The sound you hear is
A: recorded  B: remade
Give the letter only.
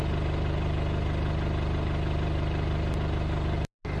A